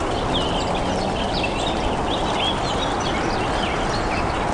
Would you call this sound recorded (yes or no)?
yes